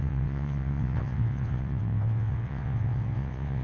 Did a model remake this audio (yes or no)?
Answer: yes